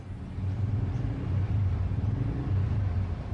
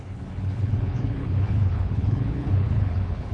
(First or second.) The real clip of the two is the first